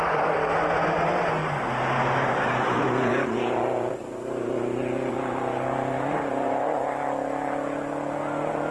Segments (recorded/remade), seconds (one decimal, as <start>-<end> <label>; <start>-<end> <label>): 0.0-8.7 recorded